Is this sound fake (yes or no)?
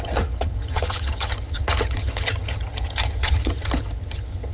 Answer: yes